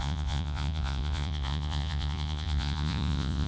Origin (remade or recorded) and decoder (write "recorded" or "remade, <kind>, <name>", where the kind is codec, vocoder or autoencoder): remade, vocoder, Vocos